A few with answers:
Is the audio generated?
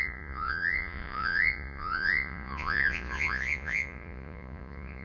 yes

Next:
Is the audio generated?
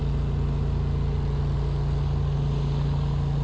no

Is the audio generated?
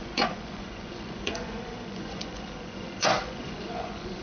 yes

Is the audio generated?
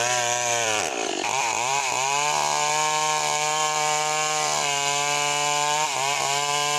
yes